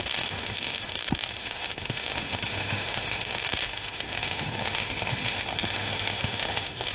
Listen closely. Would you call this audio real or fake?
fake